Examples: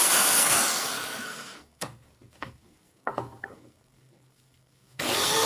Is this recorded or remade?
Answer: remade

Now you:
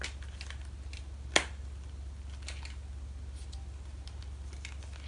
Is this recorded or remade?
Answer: recorded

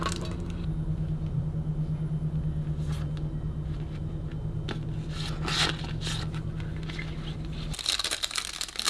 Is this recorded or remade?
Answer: recorded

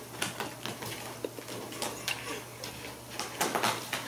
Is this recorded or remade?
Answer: recorded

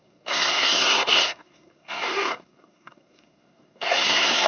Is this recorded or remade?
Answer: remade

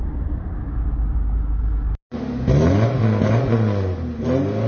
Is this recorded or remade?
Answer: recorded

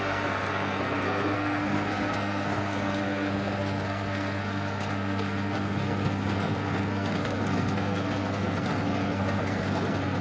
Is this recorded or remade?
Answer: remade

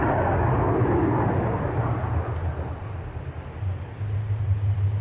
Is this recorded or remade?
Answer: recorded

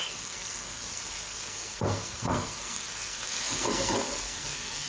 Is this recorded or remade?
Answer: remade